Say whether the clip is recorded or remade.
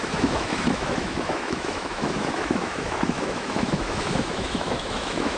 remade